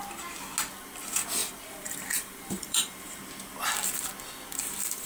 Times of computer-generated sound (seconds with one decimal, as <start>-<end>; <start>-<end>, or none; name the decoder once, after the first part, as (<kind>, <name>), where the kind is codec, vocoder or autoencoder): 1.4-3.2 (vocoder, BigVGAN v2)